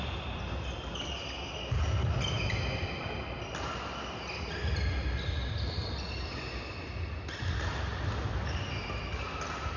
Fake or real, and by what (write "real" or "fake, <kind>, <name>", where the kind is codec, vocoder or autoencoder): real